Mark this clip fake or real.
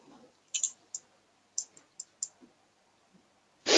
real